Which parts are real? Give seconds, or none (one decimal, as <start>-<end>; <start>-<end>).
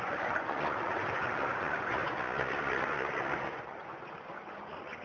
none